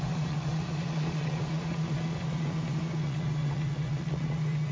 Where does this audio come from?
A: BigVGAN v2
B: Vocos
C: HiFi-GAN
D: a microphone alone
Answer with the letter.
B